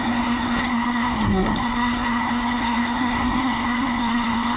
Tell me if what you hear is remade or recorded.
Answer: remade